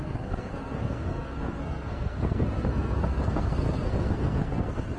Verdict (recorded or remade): remade